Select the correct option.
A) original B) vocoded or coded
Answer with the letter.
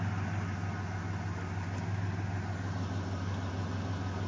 A